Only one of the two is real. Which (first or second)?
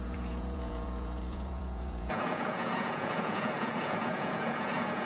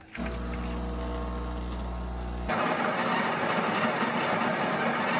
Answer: second